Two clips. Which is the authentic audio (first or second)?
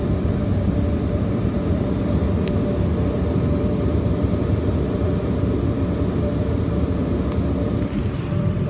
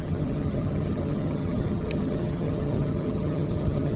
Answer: first